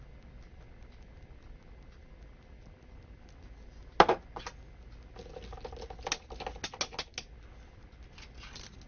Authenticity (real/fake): real